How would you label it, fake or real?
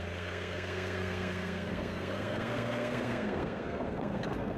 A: fake